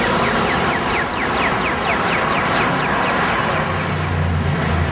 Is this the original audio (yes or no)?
yes